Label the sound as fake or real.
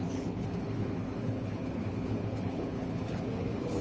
fake